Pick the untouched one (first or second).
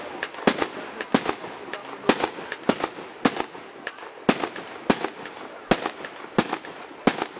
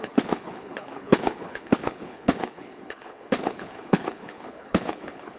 first